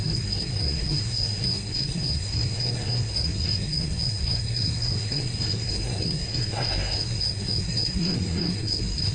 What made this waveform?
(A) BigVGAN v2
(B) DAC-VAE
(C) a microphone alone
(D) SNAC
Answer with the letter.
D